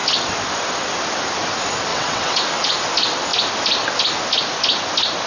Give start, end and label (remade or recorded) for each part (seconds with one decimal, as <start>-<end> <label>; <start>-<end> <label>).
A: 0.0-1.9 recorded; 1.9-2.4 remade; 2.4-5.3 recorded

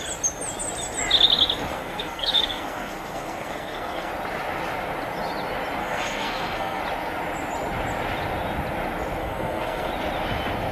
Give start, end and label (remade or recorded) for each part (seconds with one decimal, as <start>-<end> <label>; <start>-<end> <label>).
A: 0.0-1.7 recorded; 1.7-4.1 remade; 4.1-5.8 recorded; 5.8-6.8 remade; 6.8-9.2 recorded; 9.2-9.9 remade; 9.9-10.7 recorded

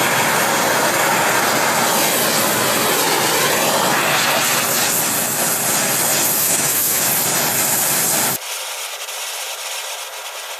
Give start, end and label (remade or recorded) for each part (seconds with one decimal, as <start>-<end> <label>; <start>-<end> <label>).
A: 0.0-6.4 recorded; 6.4-7.0 remade; 7.0-10.6 recorded

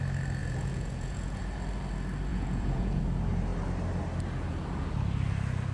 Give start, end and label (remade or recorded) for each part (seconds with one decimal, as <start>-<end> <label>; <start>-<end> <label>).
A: 0.0-0.4 recorded; 0.4-1.4 remade; 1.4-2.3 recorded; 2.3-3.0 remade; 3.0-5.7 recorded